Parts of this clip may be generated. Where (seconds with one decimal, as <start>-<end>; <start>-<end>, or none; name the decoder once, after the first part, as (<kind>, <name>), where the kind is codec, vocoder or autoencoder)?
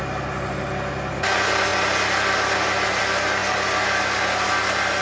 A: none